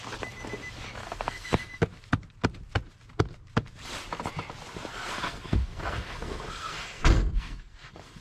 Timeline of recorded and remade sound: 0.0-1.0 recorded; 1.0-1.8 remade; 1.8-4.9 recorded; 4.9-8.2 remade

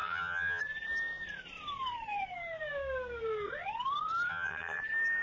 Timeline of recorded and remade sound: 0.0-0.6 remade; 0.6-4.3 recorded; 4.3-4.8 remade; 4.8-5.2 recorded

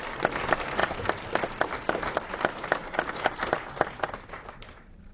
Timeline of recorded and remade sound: 0.0-5.1 recorded

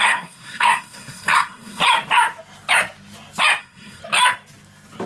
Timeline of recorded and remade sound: 0.0-1.8 remade; 1.8-3.6 recorded; 3.6-4.0 remade; 4.0-5.1 recorded

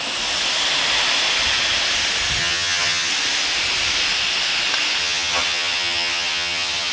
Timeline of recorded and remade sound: 0.0-2.4 recorded; 2.4-3.1 remade; 3.1-5.0 recorded; 5.0-6.9 remade